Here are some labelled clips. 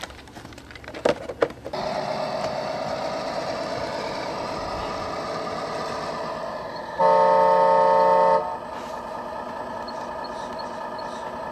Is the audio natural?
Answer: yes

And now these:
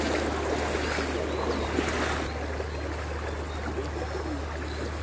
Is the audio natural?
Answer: yes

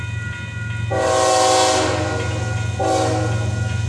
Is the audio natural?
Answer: yes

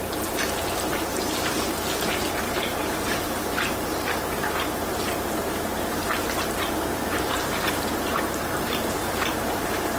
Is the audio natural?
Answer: no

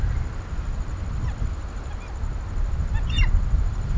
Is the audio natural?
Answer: yes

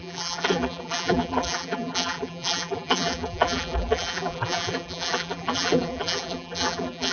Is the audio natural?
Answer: no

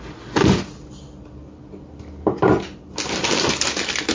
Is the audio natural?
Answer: yes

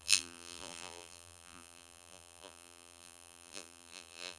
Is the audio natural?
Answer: no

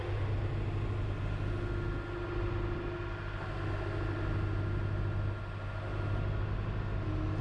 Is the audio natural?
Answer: yes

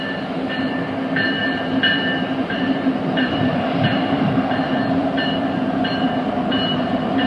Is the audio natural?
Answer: no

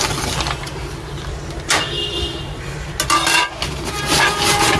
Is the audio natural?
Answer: yes